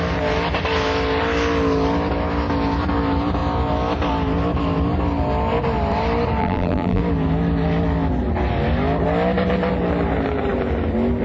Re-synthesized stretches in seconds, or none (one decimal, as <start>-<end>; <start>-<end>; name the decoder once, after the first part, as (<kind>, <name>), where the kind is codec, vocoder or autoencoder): 6.4-7.0 (vocoder, BigVGAN v2)